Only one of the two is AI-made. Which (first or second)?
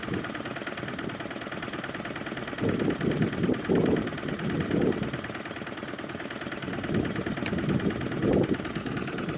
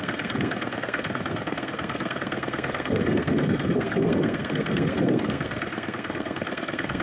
second